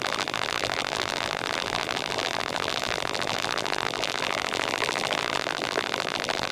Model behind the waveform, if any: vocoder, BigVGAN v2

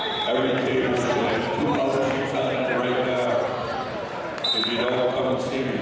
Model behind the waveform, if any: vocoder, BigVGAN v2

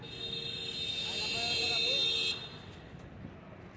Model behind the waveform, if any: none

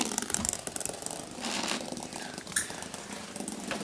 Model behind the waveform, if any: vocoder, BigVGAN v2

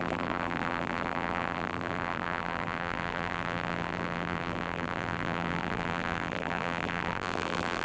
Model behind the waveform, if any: vocoder, BigVGAN v2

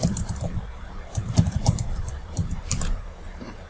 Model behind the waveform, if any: vocoder, BigVGAN v2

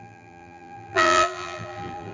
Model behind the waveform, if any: vocoder, BigVGAN v2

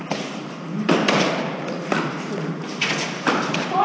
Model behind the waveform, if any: vocoder, BigVGAN v2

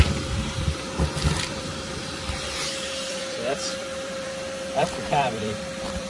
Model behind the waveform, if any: vocoder, BigVGAN v2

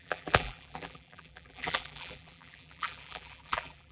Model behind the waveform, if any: vocoder, BigVGAN v2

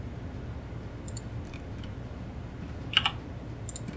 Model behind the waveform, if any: none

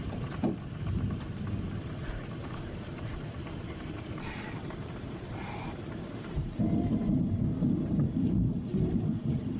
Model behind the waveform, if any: vocoder, BigVGAN v2